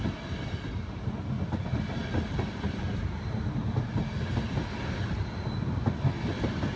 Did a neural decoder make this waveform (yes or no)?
no